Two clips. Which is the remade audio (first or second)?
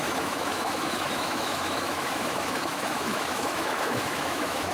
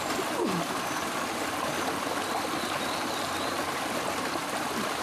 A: first